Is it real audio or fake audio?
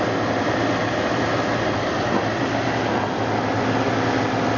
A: real